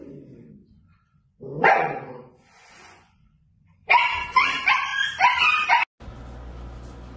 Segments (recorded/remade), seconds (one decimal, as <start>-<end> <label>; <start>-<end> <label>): 0.0-0.6 recorded; 0.6-4.5 remade; 4.5-7.2 recorded